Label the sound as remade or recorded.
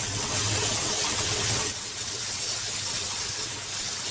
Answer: remade